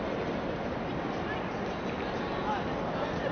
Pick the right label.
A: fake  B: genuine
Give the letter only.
B